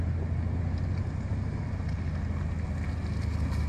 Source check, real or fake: real